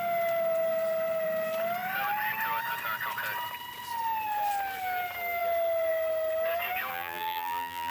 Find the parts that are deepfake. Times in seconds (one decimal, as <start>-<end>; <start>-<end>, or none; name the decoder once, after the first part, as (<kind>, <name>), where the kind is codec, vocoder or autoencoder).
6.9-7.9 (vocoder, BigVGAN v2)